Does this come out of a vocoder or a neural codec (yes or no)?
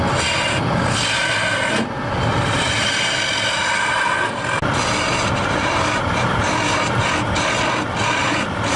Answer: no